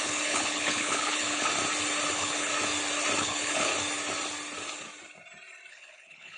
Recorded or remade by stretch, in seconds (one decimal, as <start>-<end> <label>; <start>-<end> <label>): 0.0-1.5 remade; 1.5-2.1 recorded; 2.1-2.5 remade; 2.5-3.2 recorded; 3.2-3.7 remade; 3.7-5.7 recorded; 5.7-6.4 remade